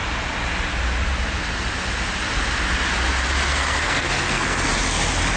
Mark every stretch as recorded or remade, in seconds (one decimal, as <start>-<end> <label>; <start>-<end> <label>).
0.0-3.5 recorded; 3.5-4.7 remade; 4.7-5.4 recorded